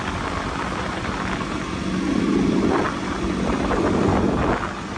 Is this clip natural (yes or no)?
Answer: yes